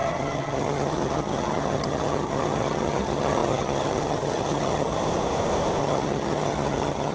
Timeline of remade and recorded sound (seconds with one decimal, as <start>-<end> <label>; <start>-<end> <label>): 0.0-5.0 remade; 5.0-5.8 recorded; 5.8-7.1 remade